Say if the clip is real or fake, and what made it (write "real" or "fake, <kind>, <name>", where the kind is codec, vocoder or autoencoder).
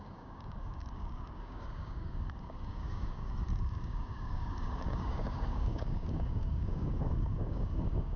fake, codec, DAC